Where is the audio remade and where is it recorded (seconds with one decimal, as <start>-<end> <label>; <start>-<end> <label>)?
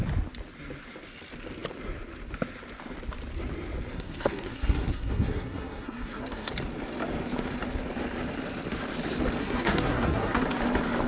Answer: 0.0-3.9 recorded; 3.9-6.5 remade; 6.5-9.4 recorded; 9.4-10.4 remade; 10.4-11.1 recorded